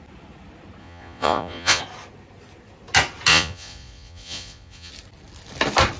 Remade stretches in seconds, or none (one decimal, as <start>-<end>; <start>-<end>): 0.8-1.8; 3.3-4.9